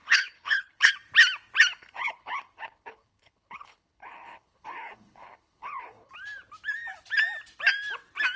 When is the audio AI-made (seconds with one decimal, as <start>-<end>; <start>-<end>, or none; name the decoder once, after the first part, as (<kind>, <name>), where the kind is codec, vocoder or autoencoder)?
0.0-0.9 (codec, HILCodec); 1.8-6.1